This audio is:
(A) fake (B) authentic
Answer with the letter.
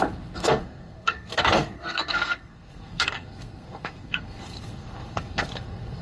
A